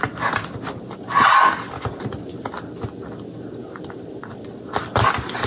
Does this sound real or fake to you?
real